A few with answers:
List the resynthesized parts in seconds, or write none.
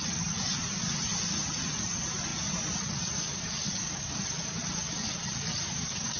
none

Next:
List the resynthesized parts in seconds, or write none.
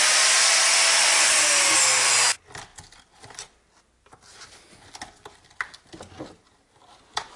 none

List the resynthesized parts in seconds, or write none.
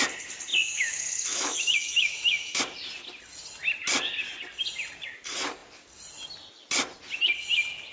0.5-2.6 (autoencoder, DAC-VAE)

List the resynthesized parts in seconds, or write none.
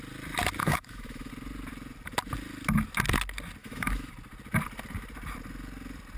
0.6-1.3 (autoencoder, DAC-VAE); 3.6-4.1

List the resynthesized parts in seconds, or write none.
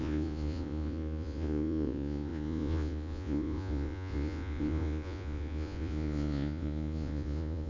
0.0-7.7 (vocoder, Vocos)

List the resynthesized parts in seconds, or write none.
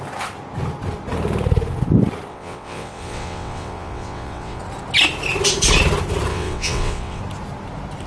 2.3-4.6 (vocoder, WaveNeXt); 6.3-7.2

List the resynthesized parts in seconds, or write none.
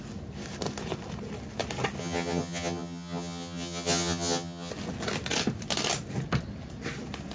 2.0-4.7 (vocoder, HiFi-GAN)